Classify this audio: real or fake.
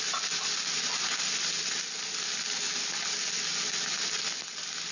real